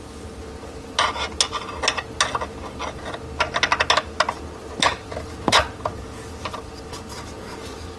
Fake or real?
real